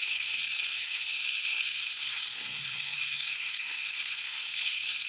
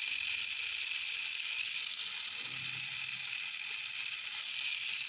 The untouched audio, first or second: second